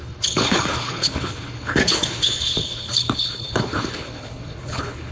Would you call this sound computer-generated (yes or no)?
yes